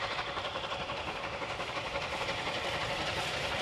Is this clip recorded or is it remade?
remade